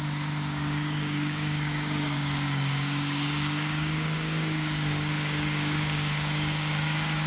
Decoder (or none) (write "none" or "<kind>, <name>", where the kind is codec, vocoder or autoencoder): codec, DAC